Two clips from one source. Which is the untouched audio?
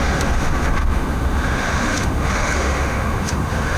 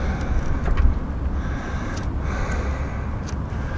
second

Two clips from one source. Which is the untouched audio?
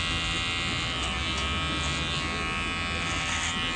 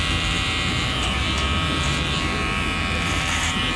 first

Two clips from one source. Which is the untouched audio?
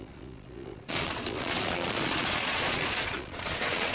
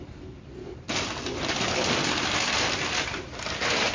second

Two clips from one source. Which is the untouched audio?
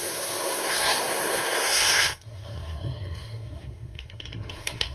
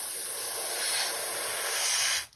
second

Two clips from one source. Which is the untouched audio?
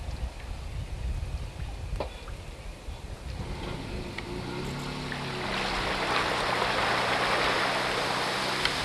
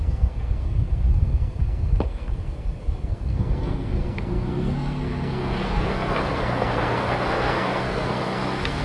first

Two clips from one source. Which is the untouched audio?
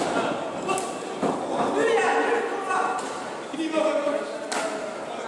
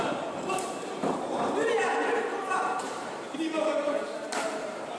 first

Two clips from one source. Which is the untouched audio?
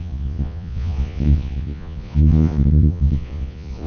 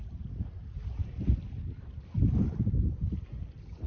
second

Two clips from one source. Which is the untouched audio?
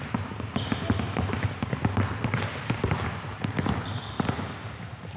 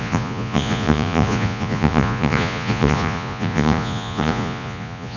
first